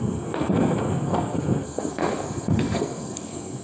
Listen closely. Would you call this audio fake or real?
fake